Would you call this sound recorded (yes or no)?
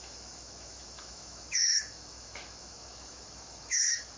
no